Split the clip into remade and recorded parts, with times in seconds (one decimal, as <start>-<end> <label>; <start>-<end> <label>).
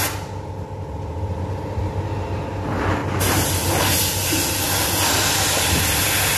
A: 0.0-6.4 recorded